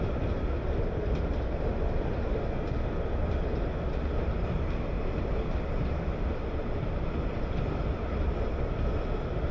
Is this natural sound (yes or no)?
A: yes